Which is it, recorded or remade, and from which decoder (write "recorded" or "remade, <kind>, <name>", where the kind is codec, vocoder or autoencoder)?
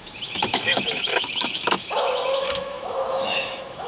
remade, autoencoder, DAC-VAE